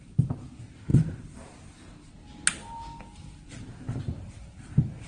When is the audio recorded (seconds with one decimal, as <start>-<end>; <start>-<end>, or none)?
0.0-5.1